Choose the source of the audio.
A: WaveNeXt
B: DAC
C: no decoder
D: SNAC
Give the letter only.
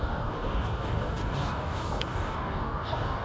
B